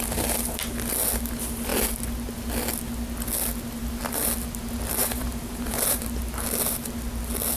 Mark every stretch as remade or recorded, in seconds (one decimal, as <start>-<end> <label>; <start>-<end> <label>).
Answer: 0.0-5.0 recorded; 5.0-6.2 remade; 6.2-7.6 recorded

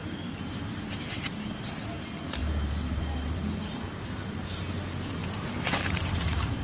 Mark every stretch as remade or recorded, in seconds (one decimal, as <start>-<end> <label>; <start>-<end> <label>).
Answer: 0.0-0.9 remade; 0.9-2.4 recorded; 2.4-3.0 remade; 3.0-3.6 recorded; 3.6-4.5 remade; 4.5-5.2 recorded; 5.2-6.6 remade